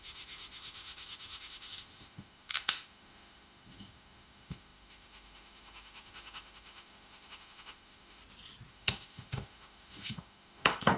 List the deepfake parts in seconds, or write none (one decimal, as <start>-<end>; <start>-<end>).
0.0-8.2; 8.7-11.0